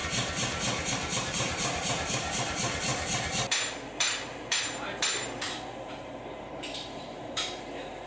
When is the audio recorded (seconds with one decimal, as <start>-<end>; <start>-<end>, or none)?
0.0-1.3; 2.9-6.4